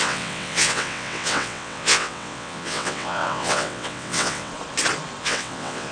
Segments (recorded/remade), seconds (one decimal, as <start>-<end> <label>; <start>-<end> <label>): 0.0-4.5 remade; 4.5-5.2 recorded; 5.2-5.9 remade